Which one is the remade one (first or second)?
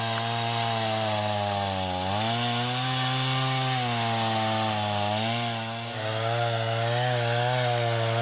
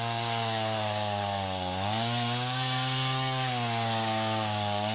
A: second